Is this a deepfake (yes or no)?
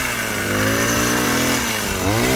no